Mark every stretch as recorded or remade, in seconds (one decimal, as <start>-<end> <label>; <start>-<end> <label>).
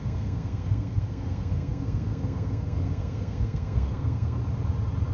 0.0-4.4 remade; 4.4-5.1 recorded